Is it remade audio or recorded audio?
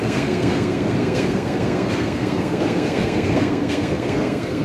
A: remade